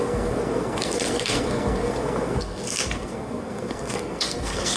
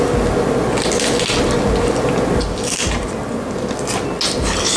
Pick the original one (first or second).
second